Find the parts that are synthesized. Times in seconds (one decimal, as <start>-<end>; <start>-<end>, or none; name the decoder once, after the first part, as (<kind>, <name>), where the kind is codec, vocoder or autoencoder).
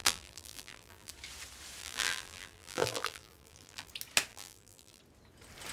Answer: 0.0-1.1 (vocoder, BigVGAN v2); 1.8-3.9; 4.3-5.0